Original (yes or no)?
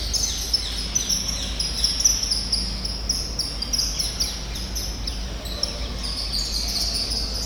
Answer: yes